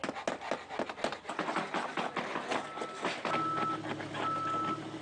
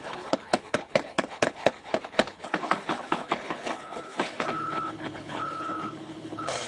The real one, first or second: first